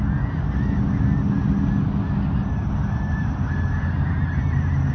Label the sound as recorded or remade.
recorded